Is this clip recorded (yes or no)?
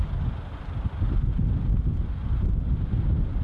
yes